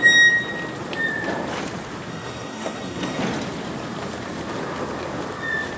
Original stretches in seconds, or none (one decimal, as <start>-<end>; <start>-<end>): 0.0-2.1; 3.2-5.8